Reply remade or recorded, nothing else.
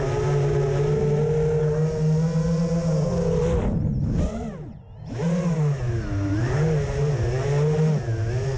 recorded